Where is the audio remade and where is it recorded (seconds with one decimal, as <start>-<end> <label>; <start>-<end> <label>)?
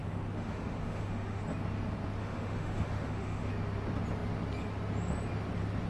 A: 0.0-1.4 remade; 1.4-2.2 recorded; 2.2-3.5 remade; 3.5-5.9 recorded